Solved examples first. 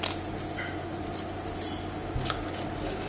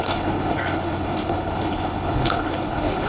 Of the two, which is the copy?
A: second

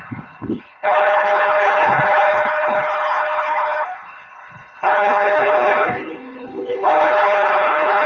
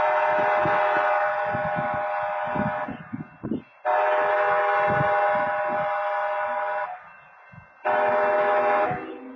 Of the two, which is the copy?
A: first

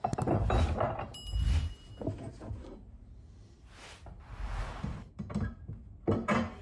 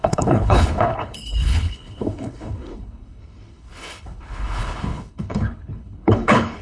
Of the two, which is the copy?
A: second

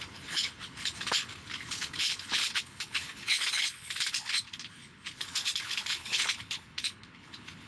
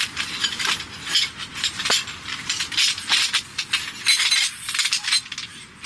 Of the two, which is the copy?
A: first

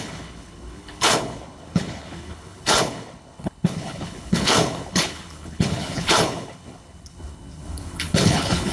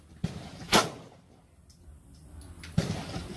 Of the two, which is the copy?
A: first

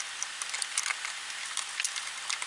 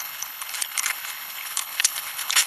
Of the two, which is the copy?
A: second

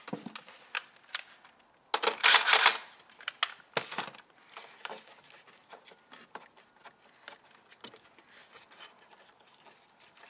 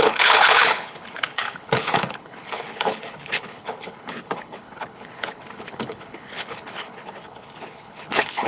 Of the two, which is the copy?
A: second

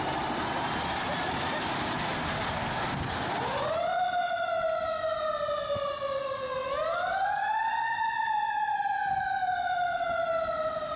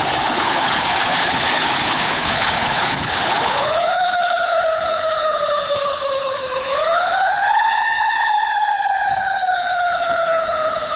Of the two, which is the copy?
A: second